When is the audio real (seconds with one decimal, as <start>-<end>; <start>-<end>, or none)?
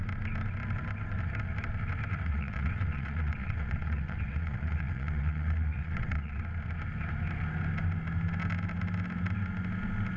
0.0-2.1; 6.4-10.2